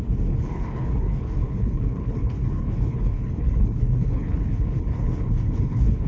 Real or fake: fake